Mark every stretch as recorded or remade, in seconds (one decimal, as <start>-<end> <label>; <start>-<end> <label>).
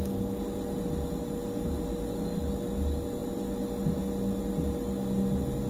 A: 0.0-5.7 recorded